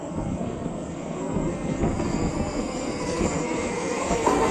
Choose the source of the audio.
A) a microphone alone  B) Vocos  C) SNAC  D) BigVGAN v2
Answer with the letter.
C